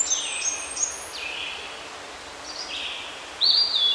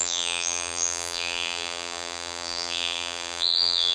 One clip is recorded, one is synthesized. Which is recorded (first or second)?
first